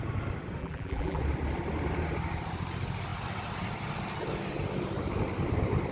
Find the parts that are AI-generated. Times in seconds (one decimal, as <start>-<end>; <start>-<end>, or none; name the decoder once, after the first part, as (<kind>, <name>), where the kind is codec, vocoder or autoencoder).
0.6-1.2 (vocoder, BigVGAN v2)